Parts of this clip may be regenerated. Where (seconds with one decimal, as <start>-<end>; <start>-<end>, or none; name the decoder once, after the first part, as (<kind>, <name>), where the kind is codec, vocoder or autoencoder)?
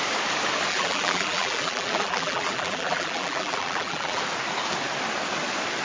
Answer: 0.7-4.2 (vocoder, BigVGAN v2)